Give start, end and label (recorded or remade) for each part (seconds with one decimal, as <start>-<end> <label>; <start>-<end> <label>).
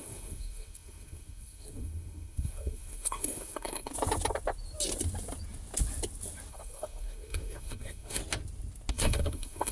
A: 0.0-3.9 remade; 3.9-6.5 recorded; 6.5-8.2 remade; 8.2-8.9 recorded; 8.9-9.7 remade